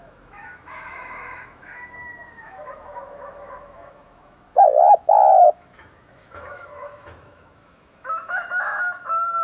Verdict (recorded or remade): remade